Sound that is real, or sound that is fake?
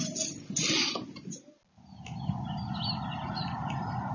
real